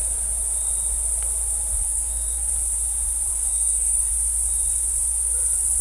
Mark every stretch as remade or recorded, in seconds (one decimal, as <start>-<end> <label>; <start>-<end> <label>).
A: 0.0-1.8 recorded; 1.8-2.5 remade; 2.5-3.3 recorded; 3.3-4.1 remade; 4.1-5.8 recorded